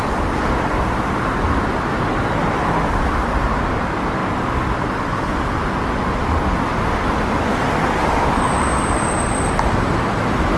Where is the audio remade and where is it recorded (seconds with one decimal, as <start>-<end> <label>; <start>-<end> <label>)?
0.0-10.6 recorded